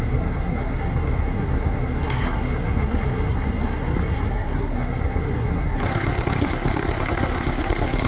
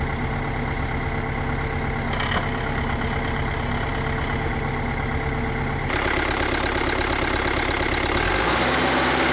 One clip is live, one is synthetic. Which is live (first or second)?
second